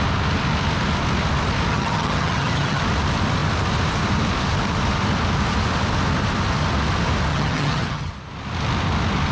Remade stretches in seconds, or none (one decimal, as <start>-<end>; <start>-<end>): 1.7-2.8; 7.3-8.1